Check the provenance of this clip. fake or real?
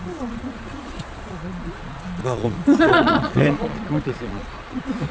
fake